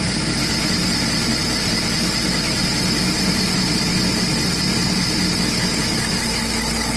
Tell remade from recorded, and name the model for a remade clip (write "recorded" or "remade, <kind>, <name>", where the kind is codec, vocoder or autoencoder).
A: recorded